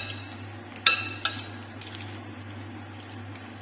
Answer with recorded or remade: recorded